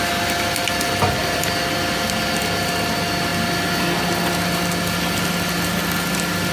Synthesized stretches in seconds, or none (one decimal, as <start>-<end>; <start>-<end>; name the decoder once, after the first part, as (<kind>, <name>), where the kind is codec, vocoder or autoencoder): none